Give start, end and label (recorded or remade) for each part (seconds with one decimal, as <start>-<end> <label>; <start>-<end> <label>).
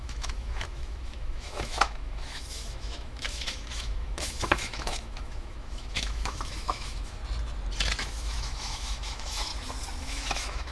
0.0-7.2 remade; 7.2-8.0 recorded; 8.0-9.5 remade; 9.5-10.0 recorded; 10.0-10.7 remade